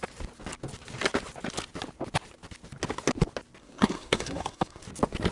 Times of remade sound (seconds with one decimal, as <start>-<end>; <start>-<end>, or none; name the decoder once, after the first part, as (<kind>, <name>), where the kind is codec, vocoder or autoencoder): 3.6-4.8 (codec, SNAC)